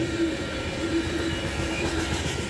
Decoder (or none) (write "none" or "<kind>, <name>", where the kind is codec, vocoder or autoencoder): vocoder, BigVGAN v2